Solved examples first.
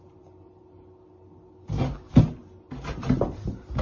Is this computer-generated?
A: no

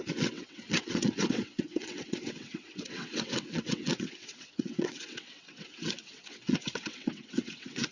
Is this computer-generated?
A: yes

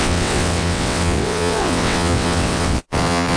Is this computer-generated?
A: yes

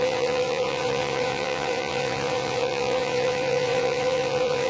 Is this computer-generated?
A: yes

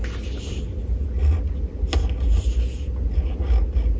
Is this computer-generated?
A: no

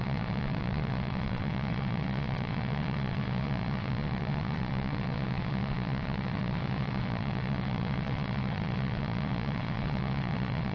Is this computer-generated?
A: yes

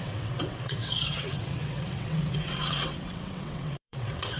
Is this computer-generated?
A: yes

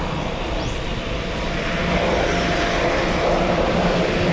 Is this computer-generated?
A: no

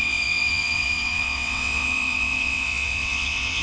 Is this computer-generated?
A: yes